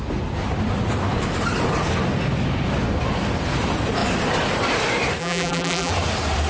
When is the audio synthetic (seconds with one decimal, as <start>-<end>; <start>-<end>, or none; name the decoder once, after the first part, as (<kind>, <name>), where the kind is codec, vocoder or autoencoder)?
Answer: 5.2-5.9 (vocoder, BigVGAN v2)